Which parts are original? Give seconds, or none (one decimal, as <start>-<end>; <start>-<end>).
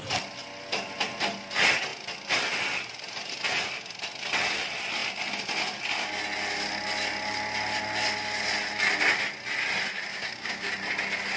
0.0-10.1; 10.7-11.4